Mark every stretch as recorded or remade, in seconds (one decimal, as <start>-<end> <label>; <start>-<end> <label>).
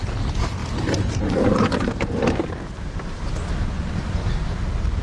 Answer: 0.0-5.0 recorded